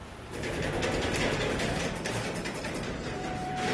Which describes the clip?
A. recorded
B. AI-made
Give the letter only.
B